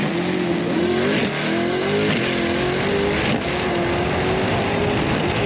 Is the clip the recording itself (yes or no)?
yes